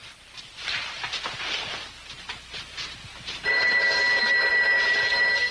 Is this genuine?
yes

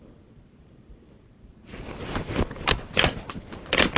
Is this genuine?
no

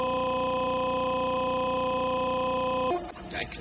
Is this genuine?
no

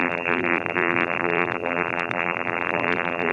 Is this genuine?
no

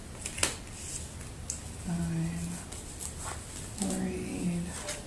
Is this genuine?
yes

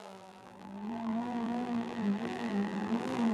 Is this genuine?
no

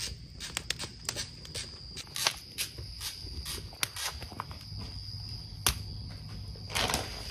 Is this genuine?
yes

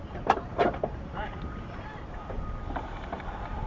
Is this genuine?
no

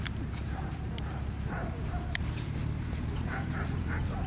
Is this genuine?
no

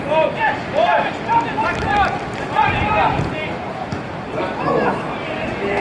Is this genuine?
yes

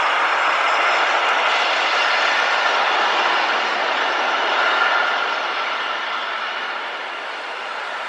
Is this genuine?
yes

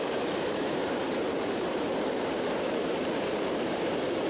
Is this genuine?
no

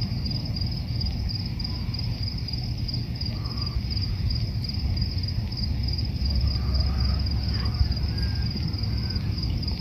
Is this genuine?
yes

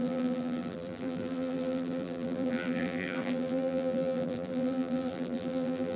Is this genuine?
no